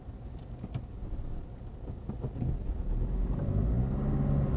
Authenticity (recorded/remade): recorded